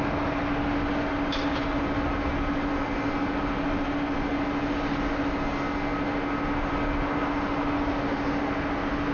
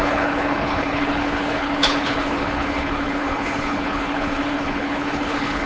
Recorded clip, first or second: first